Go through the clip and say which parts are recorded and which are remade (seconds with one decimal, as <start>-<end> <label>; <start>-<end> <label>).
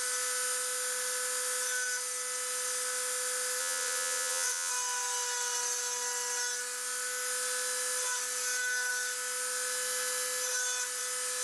0.0-3.6 recorded; 3.6-4.7 remade; 4.7-11.4 recorded